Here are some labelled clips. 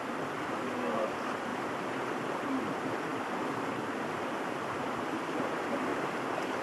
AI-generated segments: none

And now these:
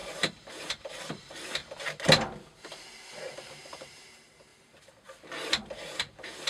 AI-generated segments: 0.0-1.6 (vocoder, BigVGAN v2); 3.3-4.5; 5.5-6.5